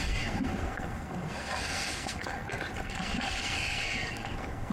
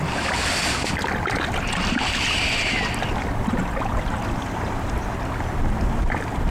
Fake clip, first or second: first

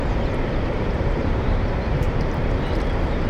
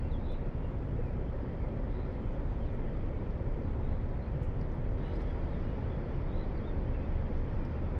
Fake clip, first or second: first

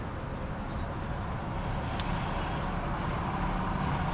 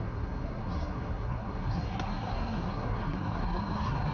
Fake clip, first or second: second